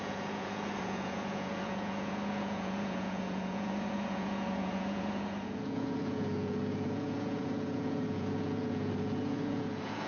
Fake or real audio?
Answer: fake